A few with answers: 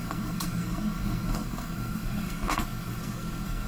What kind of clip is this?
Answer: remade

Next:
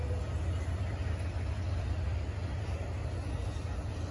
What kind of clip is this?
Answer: recorded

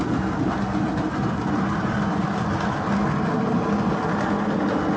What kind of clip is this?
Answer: recorded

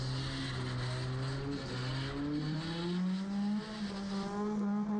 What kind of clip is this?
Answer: recorded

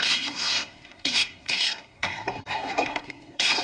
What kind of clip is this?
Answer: remade